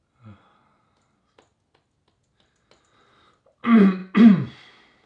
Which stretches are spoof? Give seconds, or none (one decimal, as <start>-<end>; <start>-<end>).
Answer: none